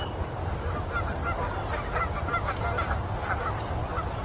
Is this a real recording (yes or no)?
yes